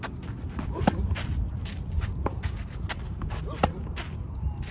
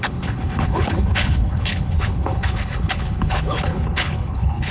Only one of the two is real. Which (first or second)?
first